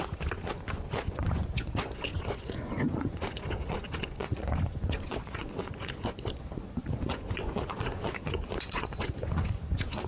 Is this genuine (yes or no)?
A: no